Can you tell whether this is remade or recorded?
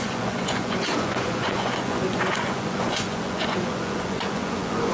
remade